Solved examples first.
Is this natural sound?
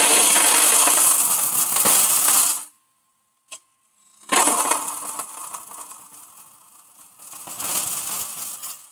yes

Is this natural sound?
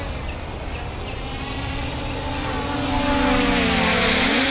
yes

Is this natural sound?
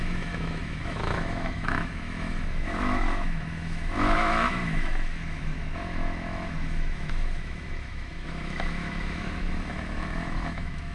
no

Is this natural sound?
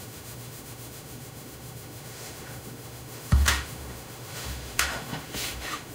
no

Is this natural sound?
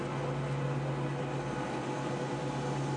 yes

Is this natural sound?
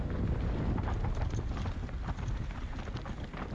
yes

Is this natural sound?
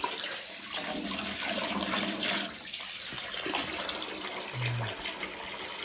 yes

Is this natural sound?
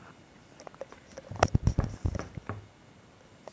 yes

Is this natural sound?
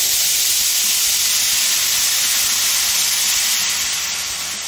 yes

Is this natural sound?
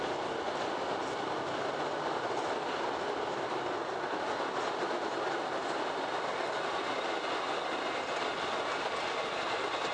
yes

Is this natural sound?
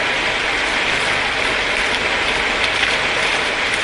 yes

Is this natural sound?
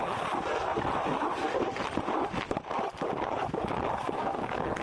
yes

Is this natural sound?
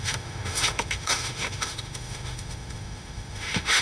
no